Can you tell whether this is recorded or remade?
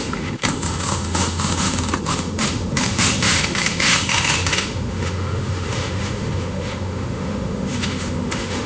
remade